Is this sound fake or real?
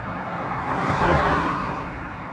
fake